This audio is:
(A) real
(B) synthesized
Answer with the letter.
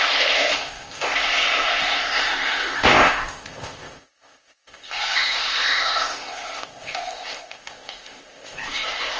B